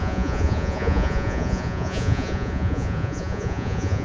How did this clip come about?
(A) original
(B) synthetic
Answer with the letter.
B